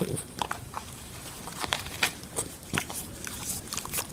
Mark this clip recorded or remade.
remade